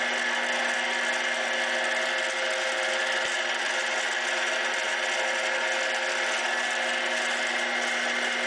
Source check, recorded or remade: recorded